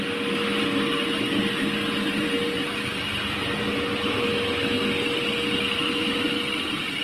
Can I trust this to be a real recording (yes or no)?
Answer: yes